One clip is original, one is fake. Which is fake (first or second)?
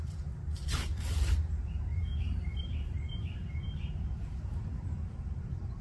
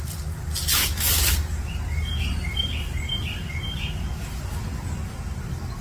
first